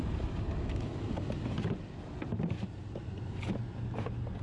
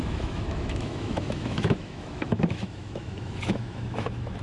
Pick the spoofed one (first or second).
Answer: second